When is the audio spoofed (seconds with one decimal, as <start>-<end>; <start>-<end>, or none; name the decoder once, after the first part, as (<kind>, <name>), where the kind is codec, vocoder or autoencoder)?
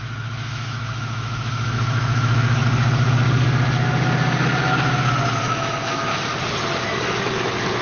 0.0-2.6 (autoencoder, DAC-VAE); 5.4-6.1; 7.2-7.8